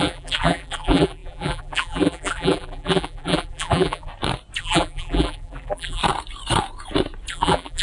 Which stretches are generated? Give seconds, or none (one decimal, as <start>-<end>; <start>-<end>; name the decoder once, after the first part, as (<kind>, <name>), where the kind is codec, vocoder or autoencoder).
0.0-4.1 (vocoder, BigVGAN v2); 4.6-6.0; 7.3-7.8